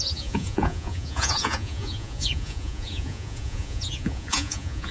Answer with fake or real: fake